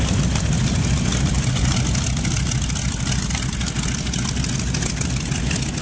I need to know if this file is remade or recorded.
recorded